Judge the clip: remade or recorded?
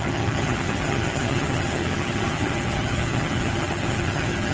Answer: remade